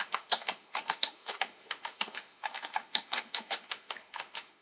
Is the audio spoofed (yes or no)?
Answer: yes